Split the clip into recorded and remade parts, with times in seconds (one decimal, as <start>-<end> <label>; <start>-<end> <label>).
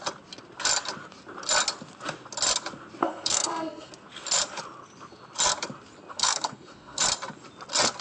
0.0-3.0 recorded; 3.0-3.9 remade; 3.9-6.1 recorded; 6.1-7.0 remade; 7.0-8.0 recorded